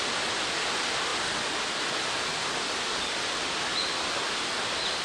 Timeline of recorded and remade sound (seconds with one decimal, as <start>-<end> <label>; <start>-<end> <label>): 0.0-5.0 recorded